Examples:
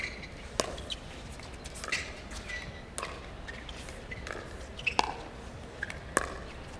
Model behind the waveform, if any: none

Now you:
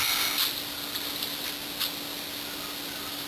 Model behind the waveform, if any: none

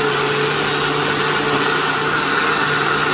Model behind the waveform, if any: none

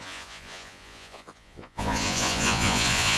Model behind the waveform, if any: vocoder, Vocos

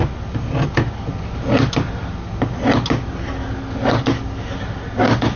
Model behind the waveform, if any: none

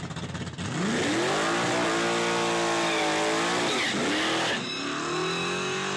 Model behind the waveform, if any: none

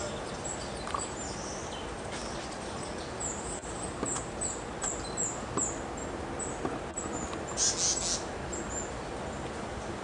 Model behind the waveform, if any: none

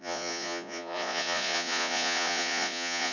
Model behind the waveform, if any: vocoder, Vocos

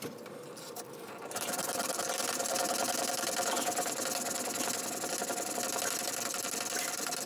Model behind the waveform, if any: none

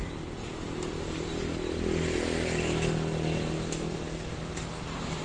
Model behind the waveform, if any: none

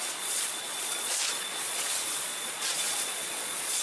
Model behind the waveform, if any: vocoder, Vocos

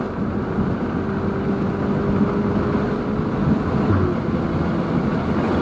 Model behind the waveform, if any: none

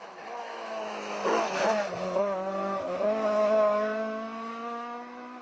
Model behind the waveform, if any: autoencoder, DAC-VAE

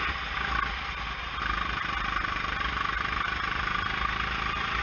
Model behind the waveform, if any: none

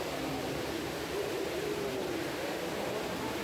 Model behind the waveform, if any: none